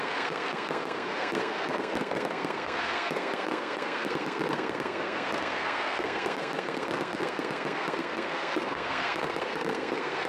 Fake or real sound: fake